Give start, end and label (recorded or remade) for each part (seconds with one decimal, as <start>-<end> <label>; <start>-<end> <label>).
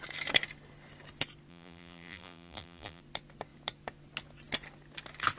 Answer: 0.0-1.5 recorded; 1.5-3.0 remade; 3.0-5.4 recorded